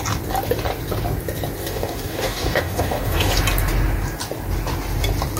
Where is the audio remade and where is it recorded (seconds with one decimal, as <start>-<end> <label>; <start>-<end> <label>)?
0.0-1.6 recorded; 1.6-3.3 remade; 3.3-5.4 recorded